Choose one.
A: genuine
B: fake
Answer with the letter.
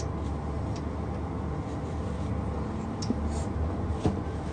A